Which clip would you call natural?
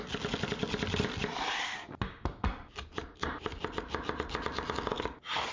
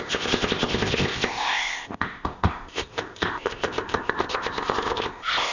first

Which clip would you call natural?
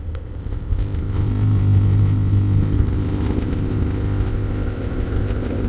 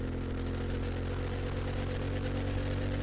second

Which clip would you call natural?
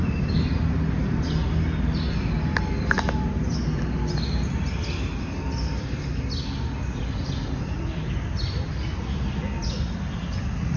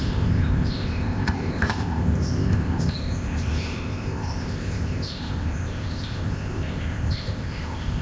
first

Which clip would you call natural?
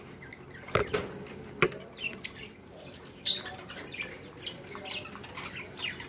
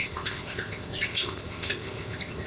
first